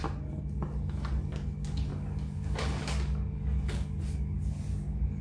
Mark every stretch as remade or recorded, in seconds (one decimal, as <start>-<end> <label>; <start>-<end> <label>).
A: 0.0-1.9 recorded; 1.9-5.2 remade